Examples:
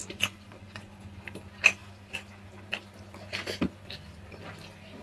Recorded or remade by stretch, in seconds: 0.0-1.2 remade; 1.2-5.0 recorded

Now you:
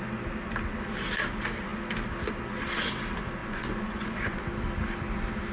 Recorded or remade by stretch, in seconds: 0.0-3.4 recorded; 3.4-4.4 remade; 4.4-5.5 recorded

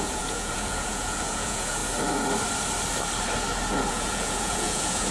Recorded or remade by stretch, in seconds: 0.0-1.8 remade; 1.8-3.9 recorded; 3.9-5.1 remade

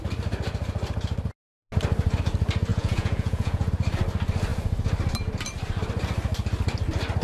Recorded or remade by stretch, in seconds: 0.0-2.7 recorded; 2.7-3.7 remade; 3.7-7.2 recorded

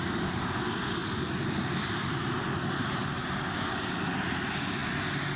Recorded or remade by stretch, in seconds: 0.0-5.4 recorded